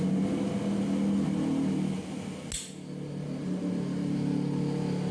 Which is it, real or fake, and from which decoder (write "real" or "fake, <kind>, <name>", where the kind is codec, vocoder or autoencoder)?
real